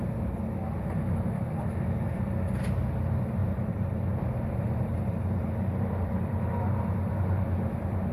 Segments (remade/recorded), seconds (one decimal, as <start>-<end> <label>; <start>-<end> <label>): 0.0-3.4 recorded; 3.4-8.1 remade